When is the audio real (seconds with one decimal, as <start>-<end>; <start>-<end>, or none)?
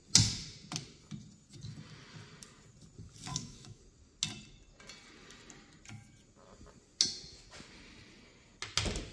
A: 0.0-3.3; 3.8-9.1